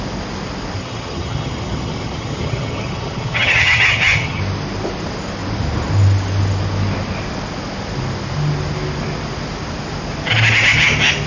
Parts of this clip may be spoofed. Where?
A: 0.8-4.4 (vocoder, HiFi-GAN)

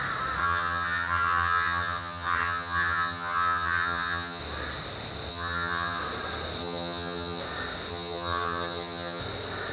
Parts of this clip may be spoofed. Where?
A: 0.4-4.4 (vocoder, HiFi-GAN); 5.3-6.0; 6.6-7.4; 7.9-9.2

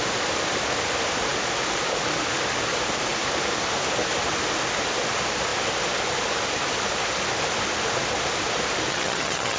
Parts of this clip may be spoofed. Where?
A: 8.9-9.6 (vocoder, HiFi-GAN)

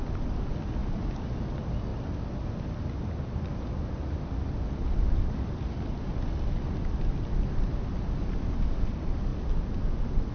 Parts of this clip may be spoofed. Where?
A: none